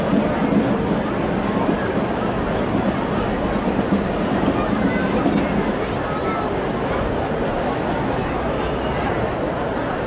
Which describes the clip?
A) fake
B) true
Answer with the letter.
B